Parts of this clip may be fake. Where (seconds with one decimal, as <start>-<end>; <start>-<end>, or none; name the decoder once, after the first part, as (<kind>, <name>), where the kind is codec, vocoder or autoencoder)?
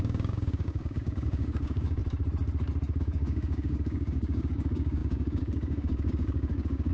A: 0.0-2.0 (codec, DAC); 3.0-6.9